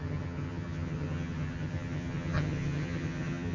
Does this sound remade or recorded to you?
remade